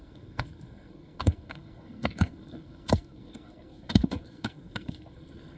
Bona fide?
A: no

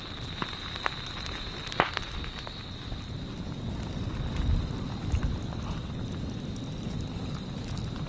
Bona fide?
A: yes